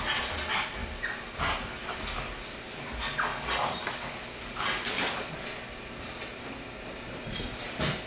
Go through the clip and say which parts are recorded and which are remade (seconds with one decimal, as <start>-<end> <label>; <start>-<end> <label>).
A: 0.0-8.1 recorded